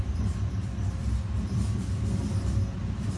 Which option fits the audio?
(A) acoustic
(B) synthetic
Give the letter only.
B